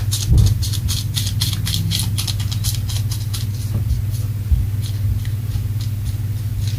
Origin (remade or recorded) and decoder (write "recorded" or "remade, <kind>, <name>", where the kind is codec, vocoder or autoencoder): recorded